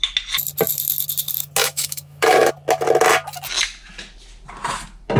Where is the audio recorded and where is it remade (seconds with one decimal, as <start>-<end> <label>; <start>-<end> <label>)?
0.0-1.6 recorded; 1.6-2.5 remade; 2.5-5.2 recorded